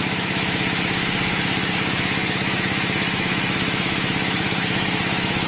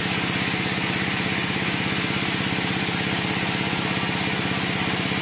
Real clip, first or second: second